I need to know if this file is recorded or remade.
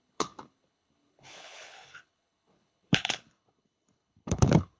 remade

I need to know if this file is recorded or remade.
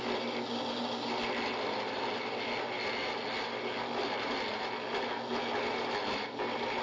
recorded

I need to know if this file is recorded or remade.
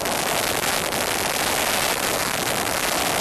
recorded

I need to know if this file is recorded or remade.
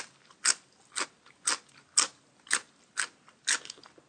recorded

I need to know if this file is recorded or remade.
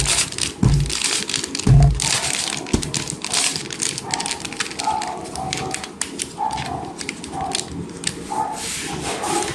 recorded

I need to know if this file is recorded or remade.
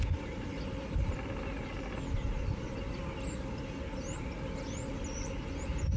recorded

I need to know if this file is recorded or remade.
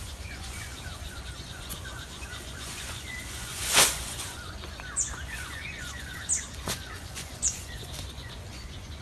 remade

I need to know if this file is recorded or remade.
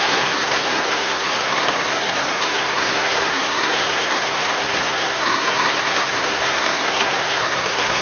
remade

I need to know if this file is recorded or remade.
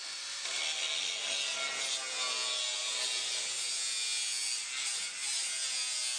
recorded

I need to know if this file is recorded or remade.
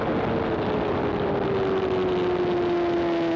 recorded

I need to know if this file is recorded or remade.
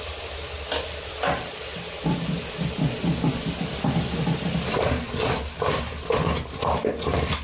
recorded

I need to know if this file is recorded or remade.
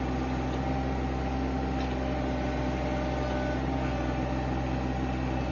recorded